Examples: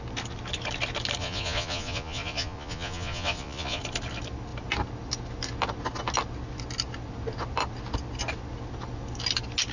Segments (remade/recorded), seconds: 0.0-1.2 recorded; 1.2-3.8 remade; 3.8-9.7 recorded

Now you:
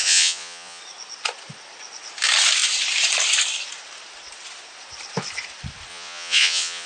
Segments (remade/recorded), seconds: 0.0-0.8 remade; 0.8-5.9 recorded; 5.9-6.9 remade

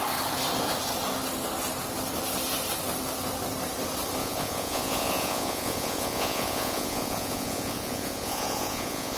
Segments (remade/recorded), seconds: 0.0-4.2 recorded; 4.2-9.2 remade